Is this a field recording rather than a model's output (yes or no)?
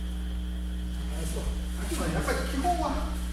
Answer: yes